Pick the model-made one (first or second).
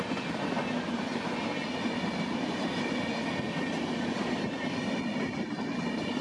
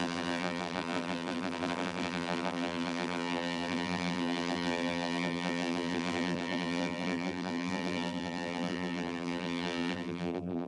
second